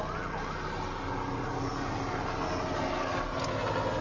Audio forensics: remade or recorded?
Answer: recorded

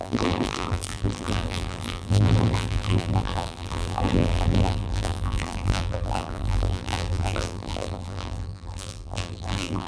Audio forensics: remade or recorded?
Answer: remade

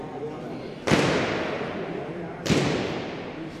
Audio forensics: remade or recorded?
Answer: recorded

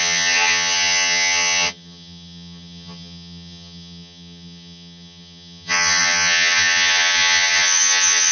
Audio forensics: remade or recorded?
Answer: remade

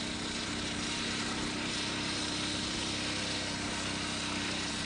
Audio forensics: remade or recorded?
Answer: recorded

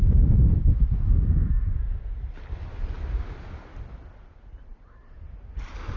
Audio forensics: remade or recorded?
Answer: recorded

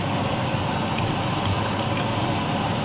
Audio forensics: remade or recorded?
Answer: recorded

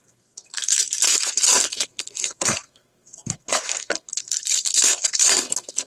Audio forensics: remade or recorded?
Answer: remade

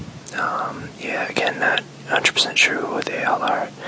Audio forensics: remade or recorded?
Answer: recorded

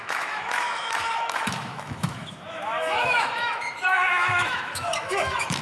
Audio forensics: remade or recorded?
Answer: remade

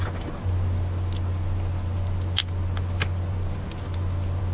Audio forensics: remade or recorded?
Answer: recorded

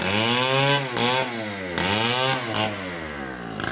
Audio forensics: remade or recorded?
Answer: recorded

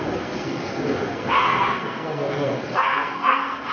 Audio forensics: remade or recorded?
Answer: remade